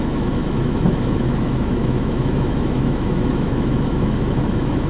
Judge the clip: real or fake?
fake